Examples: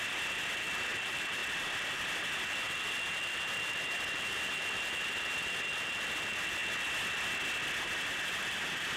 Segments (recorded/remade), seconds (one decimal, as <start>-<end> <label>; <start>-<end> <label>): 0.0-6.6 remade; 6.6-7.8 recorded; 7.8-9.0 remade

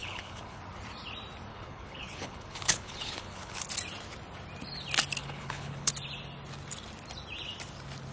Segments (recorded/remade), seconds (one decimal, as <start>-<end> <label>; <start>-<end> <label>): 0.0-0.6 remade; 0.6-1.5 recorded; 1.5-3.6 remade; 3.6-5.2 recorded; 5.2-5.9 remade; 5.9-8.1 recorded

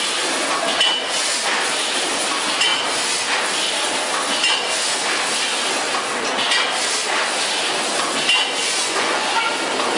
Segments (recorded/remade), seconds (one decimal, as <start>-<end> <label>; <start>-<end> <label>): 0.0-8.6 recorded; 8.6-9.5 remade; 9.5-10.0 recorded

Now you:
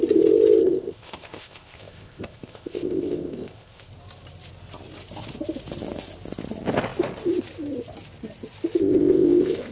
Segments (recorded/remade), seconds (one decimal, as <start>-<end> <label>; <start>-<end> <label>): 0.0-0.6 recorded; 0.6-3.9 remade; 3.9-8.8 recorded; 8.8-9.7 remade

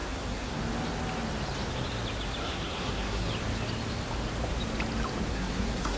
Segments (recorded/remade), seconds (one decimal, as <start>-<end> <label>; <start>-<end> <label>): 0.0-0.6 remade; 0.6-2.4 recorded; 2.4-3.3 remade; 3.3-5.3 recorded; 5.3-6.0 remade